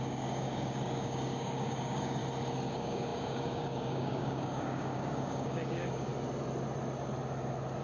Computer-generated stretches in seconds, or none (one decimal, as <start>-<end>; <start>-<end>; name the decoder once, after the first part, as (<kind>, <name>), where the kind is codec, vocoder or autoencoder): 0.0-2.2 (codec, DAC); 2.7-6.1